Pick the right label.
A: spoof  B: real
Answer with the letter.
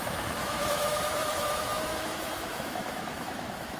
A